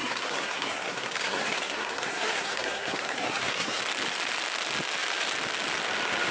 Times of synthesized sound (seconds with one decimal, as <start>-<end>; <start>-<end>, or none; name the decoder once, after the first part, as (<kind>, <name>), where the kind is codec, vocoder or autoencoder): 0.0-3.8 (codec, SNAC)